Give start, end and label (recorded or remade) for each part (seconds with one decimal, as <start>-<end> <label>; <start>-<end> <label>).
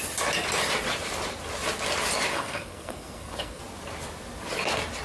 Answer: 0.0-2.3 recorded; 2.3-3.6 remade; 3.6-5.0 recorded